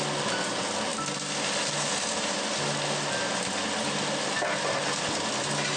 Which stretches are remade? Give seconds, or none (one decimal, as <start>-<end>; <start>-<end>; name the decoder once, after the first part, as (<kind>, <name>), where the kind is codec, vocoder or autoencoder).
none